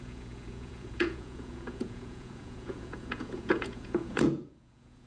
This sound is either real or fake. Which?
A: fake